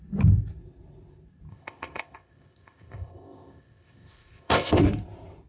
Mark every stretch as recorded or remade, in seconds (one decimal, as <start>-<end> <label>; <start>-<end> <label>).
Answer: 0.0-1.5 recorded; 1.5-4.8 remade; 4.8-5.5 recorded